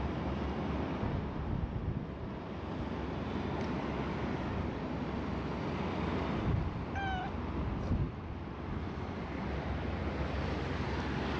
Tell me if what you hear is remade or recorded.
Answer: recorded